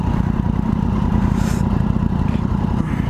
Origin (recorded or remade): remade